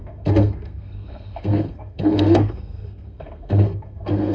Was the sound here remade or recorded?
remade